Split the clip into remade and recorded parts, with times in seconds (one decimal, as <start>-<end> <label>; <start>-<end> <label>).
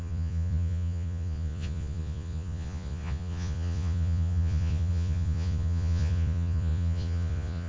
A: 0.0-7.7 remade